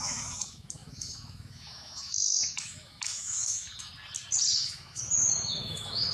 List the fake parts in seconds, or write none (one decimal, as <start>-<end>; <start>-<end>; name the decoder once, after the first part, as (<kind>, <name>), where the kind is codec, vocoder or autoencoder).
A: 0.0-3.9 (autoencoder, DAC-VAE); 4.5-6.1

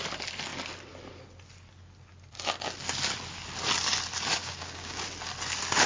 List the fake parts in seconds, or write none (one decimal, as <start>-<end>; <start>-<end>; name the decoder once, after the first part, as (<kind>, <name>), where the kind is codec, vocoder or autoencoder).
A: 4.4-5.0 (codec, DAC)

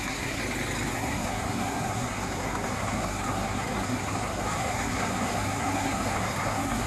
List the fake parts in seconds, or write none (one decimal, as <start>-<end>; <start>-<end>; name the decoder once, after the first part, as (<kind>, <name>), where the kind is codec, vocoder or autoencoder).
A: 0.0-0.4 (codec, SNAC); 0.9-6.9